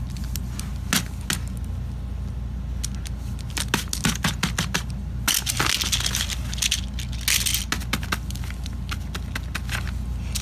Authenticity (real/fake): real